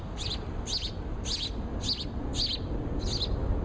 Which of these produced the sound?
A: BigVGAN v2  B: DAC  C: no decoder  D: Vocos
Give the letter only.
C